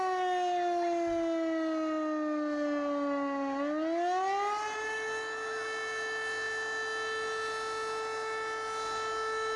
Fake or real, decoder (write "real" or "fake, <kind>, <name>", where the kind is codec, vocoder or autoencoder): real